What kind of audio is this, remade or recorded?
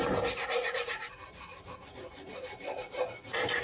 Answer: recorded